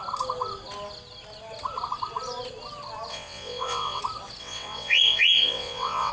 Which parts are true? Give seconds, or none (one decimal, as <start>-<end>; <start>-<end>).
0.0-3.1; 4.0-4.4